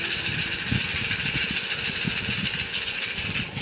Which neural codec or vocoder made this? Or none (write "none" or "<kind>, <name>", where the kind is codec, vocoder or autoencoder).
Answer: none